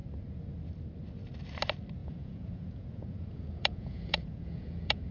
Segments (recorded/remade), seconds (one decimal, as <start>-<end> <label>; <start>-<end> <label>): 0.0-2.0 recorded; 2.0-5.1 remade